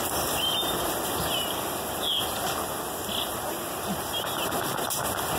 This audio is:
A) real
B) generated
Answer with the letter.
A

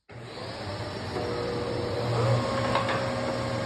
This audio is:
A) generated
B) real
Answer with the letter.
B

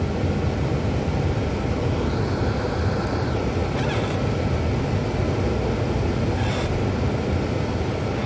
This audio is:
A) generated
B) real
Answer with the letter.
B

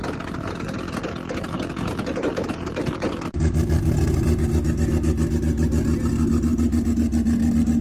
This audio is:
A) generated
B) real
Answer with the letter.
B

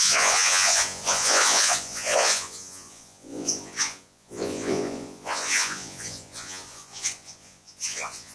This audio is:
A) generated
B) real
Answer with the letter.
A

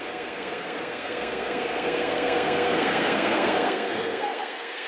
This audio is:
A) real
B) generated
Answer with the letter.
B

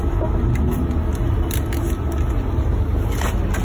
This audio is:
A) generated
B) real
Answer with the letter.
B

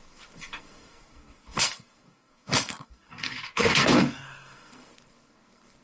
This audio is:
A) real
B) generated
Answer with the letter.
B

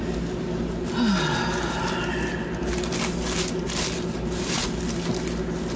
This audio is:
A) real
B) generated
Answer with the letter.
A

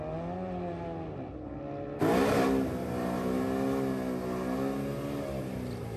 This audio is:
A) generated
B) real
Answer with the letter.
B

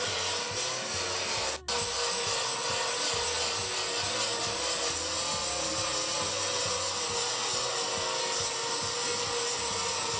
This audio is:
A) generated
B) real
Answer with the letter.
B